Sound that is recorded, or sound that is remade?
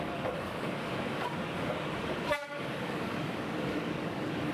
remade